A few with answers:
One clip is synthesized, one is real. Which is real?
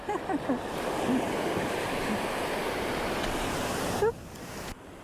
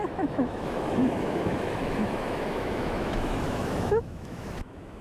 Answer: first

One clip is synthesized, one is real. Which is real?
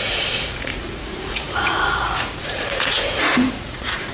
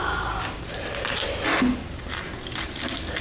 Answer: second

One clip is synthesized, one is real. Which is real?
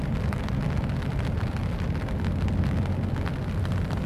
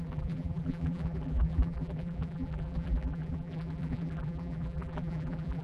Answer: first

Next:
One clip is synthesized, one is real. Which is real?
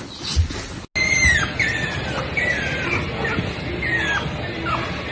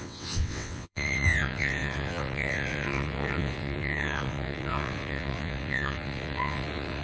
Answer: first